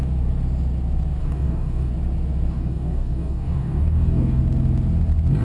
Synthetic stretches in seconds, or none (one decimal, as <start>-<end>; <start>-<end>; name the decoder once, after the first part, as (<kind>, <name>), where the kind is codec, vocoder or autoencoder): 1.2-1.9 (codec, DAC); 2.5-4.4